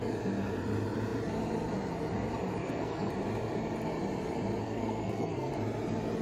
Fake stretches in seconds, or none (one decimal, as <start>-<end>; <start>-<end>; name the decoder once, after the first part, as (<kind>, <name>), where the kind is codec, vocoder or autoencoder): 2.6-3.1 (codec, SNAC); 4.6-5.5